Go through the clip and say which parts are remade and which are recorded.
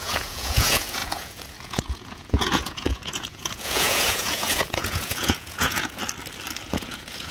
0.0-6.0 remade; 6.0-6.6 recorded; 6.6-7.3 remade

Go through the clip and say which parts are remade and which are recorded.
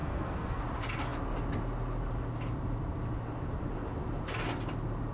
0.0-0.6 remade; 0.6-5.1 recorded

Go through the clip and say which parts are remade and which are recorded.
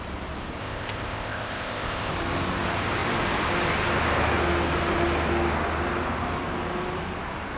0.0-0.6 recorded; 0.6-2.1 remade; 2.1-7.6 recorded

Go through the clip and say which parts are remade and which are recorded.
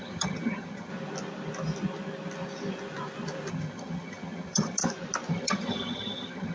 0.0-0.9 remade; 0.9-3.5 recorded; 3.5-4.8 remade; 4.8-5.3 recorded; 5.3-6.5 remade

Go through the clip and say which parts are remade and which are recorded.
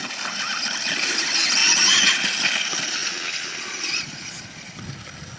0.0-1.6 recorded; 1.6-2.2 remade; 2.2-3.0 recorded; 3.0-4.7 remade; 4.7-5.4 recorded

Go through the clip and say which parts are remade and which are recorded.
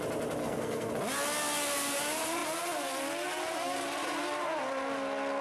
0.0-0.4 recorded; 0.4-0.9 remade; 0.9-5.4 recorded